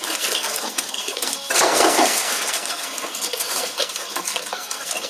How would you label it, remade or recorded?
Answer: remade